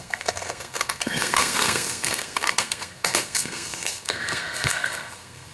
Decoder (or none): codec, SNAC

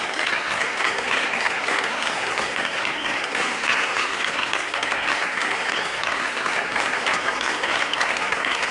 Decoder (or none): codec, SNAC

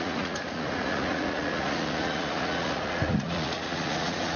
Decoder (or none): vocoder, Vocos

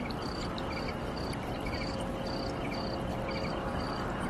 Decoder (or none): none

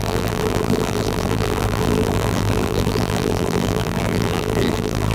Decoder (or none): vocoder, BigVGAN v2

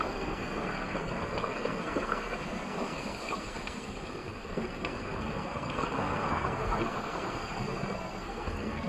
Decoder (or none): codec, SNAC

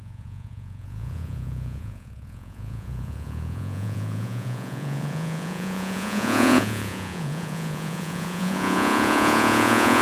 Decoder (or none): vocoder, Vocos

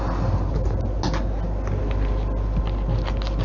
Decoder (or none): none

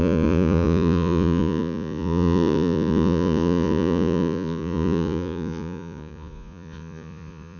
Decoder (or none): vocoder, Vocos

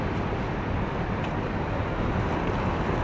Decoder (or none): none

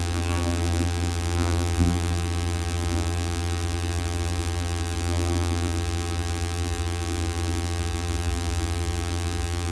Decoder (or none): vocoder, BigVGAN v2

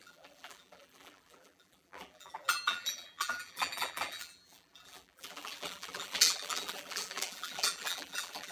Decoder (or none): vocoder, BigVGAN v2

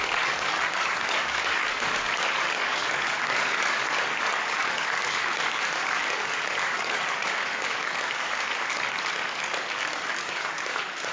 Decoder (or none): codec, DAC